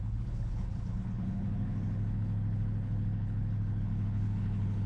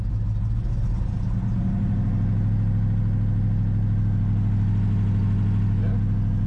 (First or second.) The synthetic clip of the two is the first